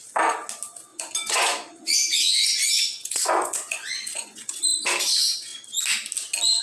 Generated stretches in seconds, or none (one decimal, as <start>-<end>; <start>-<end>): 0.9-4.6